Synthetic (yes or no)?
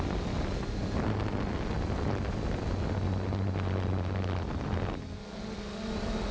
no